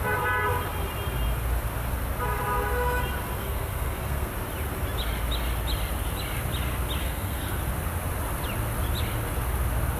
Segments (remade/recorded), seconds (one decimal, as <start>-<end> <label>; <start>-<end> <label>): 0.0-3.4 recorded; 3.4-4.3 remade; 4.3-7.0 recorded; 7.0-7.6 remade; 7.6-10.0 recorded